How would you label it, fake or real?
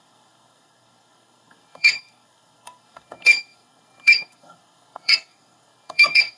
fake